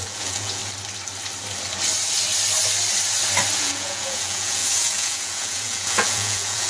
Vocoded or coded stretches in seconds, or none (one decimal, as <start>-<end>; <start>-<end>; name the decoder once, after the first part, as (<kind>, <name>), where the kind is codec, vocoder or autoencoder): 0.0-0.6 (vocoder, Vocos); 3.6-6.7